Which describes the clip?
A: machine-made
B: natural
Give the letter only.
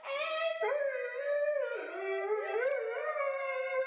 B